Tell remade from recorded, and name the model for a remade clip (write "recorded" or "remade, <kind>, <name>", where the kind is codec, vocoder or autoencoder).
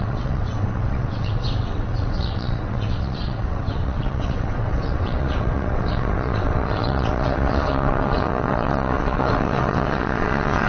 remade, vocoder, WaveNeXt